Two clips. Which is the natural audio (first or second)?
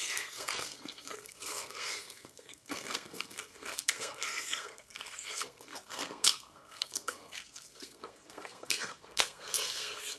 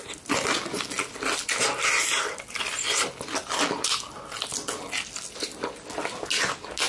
second